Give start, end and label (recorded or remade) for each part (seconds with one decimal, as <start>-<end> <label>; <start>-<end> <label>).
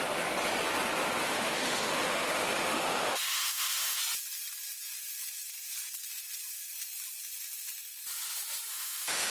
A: 0.0-1.2 recorded; 1.2-4.0 remade; 4.0-8.7 recorded; 8.7-9.3 remade